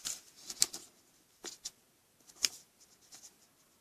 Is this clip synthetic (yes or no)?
no